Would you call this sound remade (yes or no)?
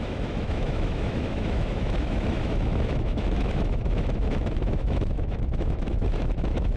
yes